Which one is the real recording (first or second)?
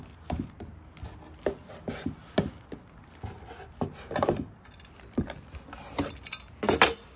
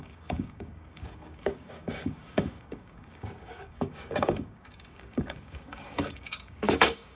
first